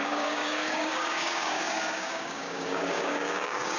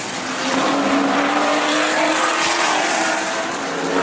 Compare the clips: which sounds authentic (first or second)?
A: second